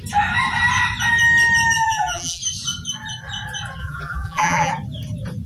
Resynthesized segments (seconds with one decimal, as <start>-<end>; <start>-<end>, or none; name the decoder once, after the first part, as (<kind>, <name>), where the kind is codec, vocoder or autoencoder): 1.8-2.4 (vocoder, BigVGAN v2); 3.8-4.7